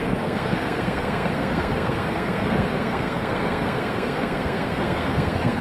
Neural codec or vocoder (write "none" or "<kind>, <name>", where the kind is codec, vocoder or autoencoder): codec, SNAC